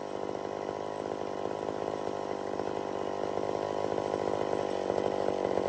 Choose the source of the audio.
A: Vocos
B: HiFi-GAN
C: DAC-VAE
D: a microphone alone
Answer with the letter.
D